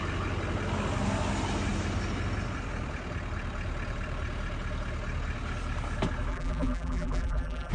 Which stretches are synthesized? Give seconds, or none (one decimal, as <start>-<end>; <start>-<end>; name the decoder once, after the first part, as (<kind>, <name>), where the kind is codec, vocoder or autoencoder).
6.3-7.7 (vocoder, BigVGAN v2)